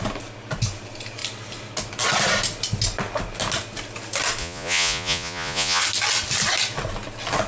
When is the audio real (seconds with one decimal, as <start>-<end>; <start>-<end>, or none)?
0.0-4.4; 5.8-7.5